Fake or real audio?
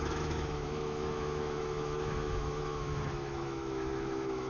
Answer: fake